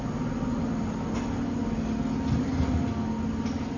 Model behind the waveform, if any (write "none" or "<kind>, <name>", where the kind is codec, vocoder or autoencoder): none